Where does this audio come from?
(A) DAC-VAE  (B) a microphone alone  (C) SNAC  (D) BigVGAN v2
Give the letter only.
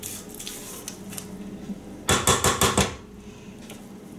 B